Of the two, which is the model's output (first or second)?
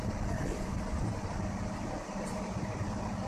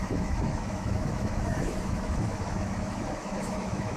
second